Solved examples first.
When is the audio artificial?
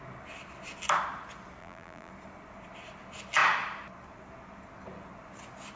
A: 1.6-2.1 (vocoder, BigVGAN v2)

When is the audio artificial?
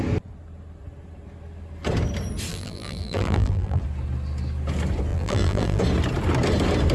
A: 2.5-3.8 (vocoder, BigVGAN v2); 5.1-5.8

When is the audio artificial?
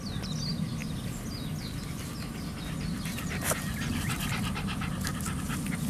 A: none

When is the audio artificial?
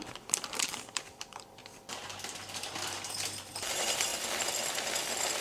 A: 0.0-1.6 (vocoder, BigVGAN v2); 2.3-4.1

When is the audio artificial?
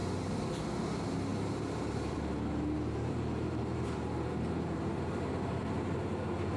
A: 0.8-6.6 (vocoder, BigVGAN v2)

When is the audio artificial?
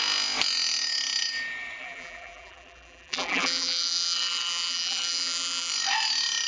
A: 1.8-5.7 (vocoder, BigVGAN v2)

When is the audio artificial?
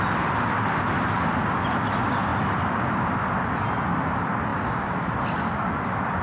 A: 4.5-5.6 (vocoder, BigVGAN v2)